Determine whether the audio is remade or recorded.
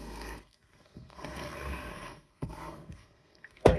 remade